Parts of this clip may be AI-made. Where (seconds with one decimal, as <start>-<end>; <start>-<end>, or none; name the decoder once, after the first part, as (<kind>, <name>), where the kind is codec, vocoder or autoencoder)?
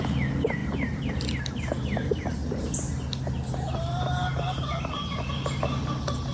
none